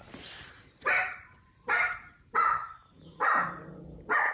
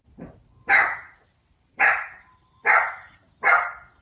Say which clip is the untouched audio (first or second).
second